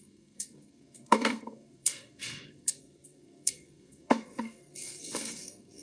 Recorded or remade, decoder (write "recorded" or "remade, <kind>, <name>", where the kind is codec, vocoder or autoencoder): remade, codec, SNAC